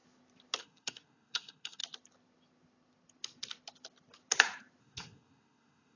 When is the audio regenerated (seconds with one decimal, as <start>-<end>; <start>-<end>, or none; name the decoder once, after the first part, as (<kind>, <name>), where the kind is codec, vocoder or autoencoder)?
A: 0.6-1.8 (codec, SNAC); 4.8-6.0